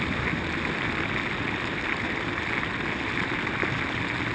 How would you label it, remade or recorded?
recorded